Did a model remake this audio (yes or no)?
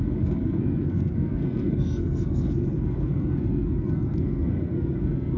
yes